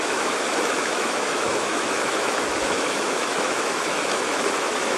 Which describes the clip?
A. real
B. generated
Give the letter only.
B